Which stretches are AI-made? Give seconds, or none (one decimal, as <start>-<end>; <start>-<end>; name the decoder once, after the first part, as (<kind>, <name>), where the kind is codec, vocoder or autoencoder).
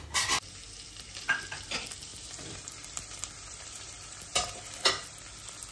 2.1-4.8 (vocoder, BigVGAN v2)